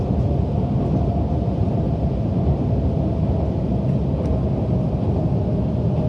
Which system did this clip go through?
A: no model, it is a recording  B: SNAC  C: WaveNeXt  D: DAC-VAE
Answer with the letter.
A